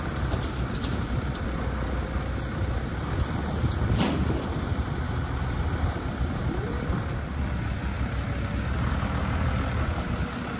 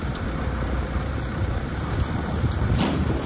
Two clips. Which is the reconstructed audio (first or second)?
second